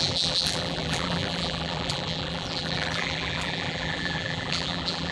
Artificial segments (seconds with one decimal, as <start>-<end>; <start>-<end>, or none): 0.0-5.1